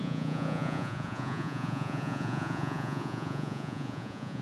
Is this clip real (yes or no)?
no